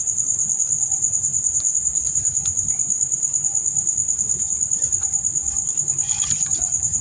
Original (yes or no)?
no